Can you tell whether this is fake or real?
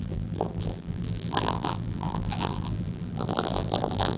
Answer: fake